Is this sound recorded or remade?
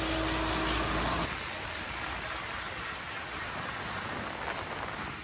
recorded